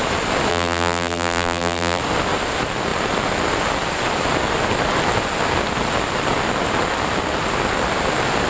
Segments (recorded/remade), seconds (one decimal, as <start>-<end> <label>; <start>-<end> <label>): 0.0-0.5 recorded; 0.5-2.0 remade; 2.0-8.5 recorded